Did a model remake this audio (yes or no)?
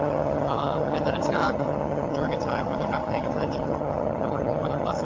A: yes